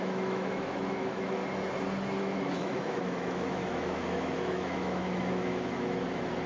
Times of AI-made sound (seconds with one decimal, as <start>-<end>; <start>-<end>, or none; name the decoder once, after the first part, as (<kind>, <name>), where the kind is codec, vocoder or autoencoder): 0.0-1.4 (autoencoder, DAC-VAE); 2.2-6.5